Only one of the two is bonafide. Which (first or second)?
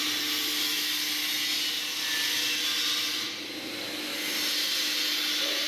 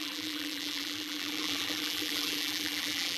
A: first